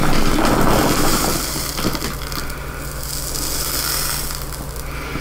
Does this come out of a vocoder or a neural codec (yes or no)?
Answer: no